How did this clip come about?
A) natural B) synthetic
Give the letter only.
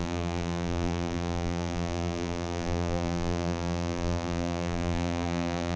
B